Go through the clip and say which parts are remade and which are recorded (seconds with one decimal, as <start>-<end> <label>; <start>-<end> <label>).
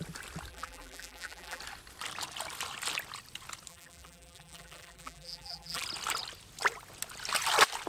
0.0-0.5 recorded; 0.5-1.6 remade; 1.6-3.7 recorded; 3.7-5.8 remade; 5.8-7.9 recorded